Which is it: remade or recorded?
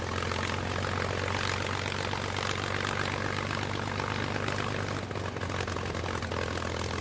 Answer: recorded